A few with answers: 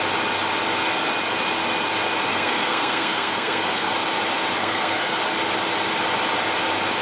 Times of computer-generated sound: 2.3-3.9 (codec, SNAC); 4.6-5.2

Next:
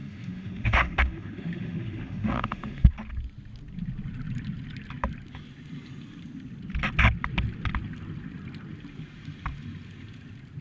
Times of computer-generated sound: 0.0-2.9 (autoencoder, DAC-VAE)

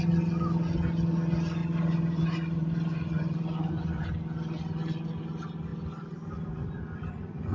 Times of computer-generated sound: 1.6-4.0 (vocoder, BigVGAN v2)